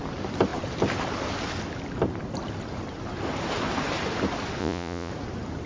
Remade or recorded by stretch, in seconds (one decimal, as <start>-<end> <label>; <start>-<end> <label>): 0.0-4.6 recorded; 4.6-5.1 remade; 5.1-5.7 recorded